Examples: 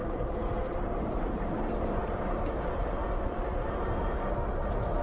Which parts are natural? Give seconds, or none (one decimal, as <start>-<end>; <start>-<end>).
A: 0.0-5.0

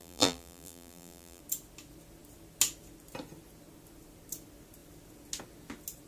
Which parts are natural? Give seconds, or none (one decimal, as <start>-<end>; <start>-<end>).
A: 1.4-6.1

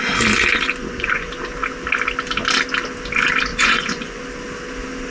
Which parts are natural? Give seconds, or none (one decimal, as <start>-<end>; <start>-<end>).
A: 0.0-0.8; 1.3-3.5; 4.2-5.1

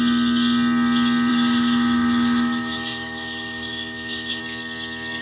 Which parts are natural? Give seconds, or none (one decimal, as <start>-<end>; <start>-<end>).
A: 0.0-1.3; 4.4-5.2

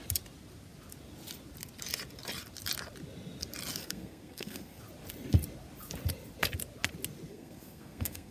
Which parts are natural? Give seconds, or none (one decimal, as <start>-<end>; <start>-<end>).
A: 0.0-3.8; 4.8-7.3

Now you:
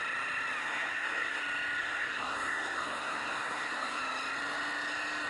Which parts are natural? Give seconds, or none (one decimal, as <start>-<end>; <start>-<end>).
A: 0.0-0.6; 1.4-1.8; 4.0-5.3

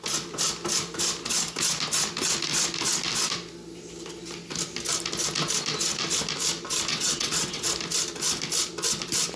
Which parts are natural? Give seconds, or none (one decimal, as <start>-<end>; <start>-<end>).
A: 0.0-6.9; 7.7-9.4

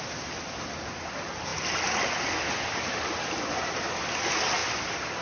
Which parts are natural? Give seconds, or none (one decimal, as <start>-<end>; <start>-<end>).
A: 0.0-5.2